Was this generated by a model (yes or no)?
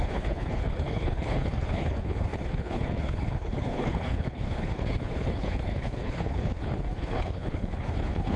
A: yes